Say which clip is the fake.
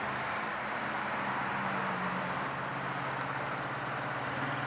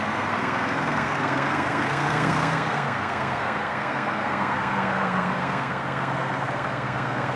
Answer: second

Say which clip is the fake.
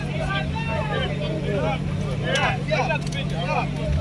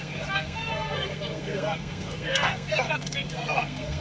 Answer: second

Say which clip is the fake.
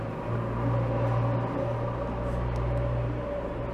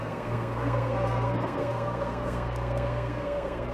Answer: second